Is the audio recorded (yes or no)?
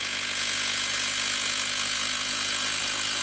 no